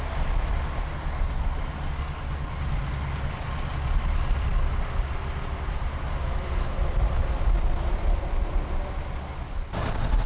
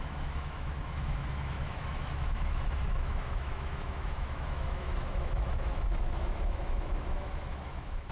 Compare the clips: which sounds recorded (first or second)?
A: first